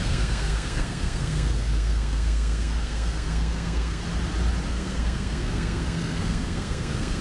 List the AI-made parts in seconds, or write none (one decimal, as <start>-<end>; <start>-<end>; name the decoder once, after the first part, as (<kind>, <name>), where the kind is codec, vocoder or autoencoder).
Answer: 0.0-4.0 (codec, SNAC); 4.7-7.2